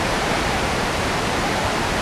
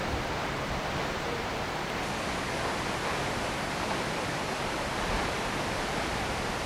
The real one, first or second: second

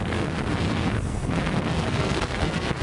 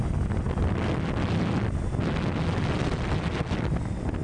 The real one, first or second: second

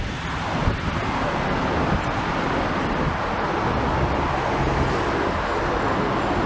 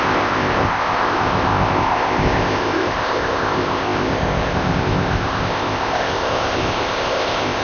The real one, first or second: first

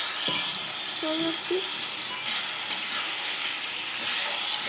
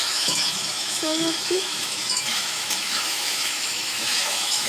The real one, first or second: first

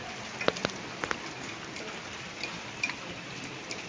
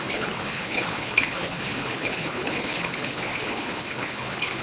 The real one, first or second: first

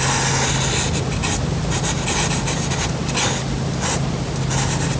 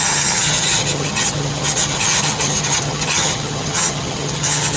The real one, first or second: first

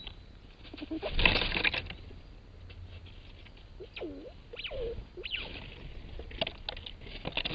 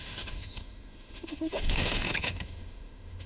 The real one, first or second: first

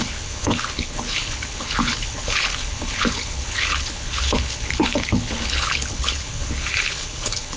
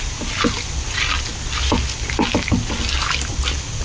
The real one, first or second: second